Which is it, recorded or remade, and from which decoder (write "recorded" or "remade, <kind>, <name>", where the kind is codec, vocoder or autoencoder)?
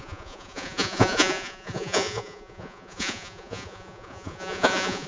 remade, vocoder, Vocos